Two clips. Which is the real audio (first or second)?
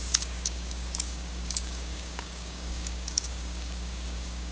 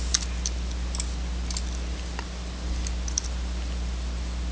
second